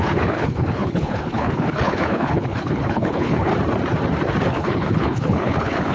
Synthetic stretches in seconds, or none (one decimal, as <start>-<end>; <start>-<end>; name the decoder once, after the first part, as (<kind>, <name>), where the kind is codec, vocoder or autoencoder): 0.0-3.5 (codec, HILCodec); 4.5-5.9